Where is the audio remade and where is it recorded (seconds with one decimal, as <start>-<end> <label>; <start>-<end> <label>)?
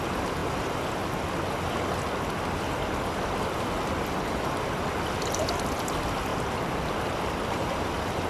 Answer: 0.0-8.3 recorded